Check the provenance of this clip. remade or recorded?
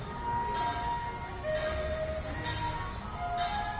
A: recorded